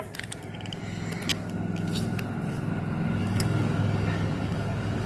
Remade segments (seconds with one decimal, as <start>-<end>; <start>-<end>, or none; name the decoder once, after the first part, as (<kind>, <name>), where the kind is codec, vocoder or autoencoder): 3.2-5.1 (codec, DAC)